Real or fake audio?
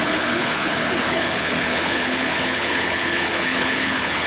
fake